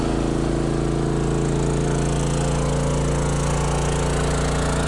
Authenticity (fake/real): real